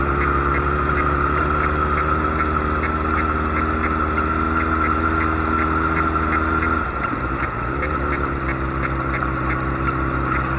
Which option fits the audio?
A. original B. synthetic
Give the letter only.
A